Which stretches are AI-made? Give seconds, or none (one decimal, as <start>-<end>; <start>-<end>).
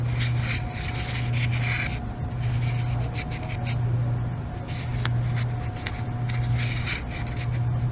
none